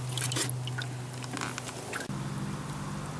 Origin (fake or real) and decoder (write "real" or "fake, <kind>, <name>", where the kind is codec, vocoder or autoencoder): real